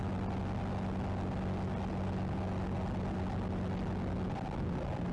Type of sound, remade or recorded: recorded